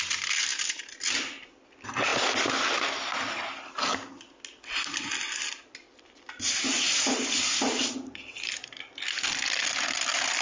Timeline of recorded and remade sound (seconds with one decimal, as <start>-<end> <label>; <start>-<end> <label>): 0.0-10.4 recorded